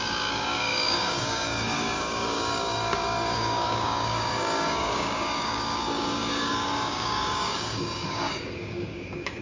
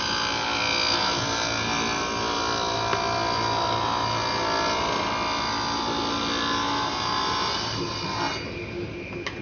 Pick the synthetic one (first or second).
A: first